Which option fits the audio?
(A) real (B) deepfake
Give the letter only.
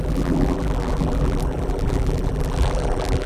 B